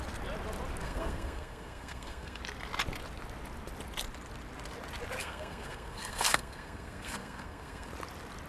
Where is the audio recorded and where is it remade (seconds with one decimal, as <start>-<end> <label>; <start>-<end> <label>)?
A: 0.0-0.8 recorded; 0.8-2.4 remade; 2.4-5.2 recorded; 5.2-7.9 remade; 7.9-8.5 recorded